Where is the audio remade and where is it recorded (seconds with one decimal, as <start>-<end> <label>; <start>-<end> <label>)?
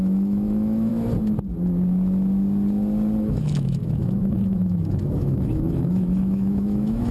0.0-0.9 remade; 0.9-3.2 recorded; 3.2-7.1 remade